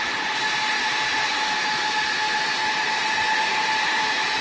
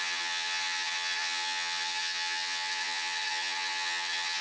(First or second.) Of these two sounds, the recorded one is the first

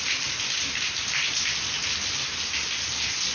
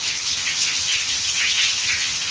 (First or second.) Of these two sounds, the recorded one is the first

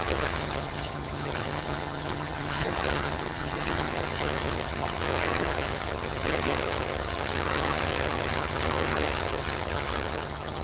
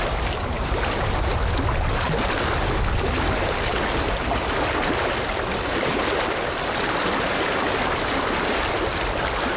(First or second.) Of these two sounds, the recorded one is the second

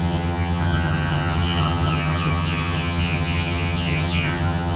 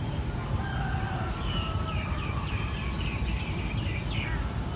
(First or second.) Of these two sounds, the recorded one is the second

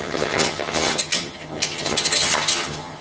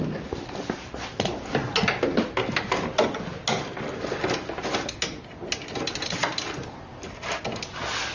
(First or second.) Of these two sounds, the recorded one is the second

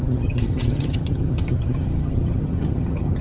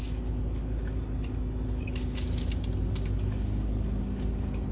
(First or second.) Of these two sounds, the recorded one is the second